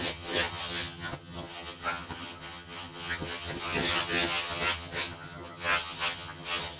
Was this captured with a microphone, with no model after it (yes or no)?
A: no